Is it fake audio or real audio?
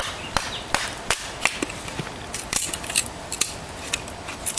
real